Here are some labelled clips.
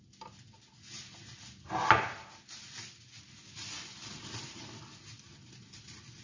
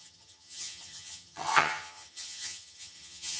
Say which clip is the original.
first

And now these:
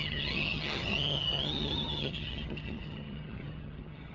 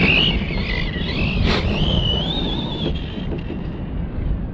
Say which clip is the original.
second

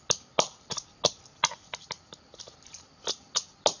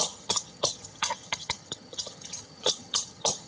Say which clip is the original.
first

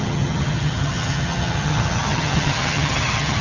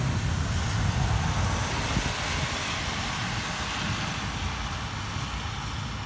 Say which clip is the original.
second